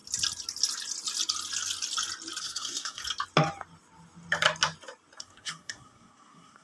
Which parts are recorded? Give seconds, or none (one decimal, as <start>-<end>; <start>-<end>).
0.0-2.4; 3.0-5.2